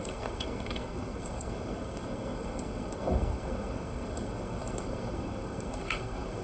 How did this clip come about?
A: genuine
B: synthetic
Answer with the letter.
B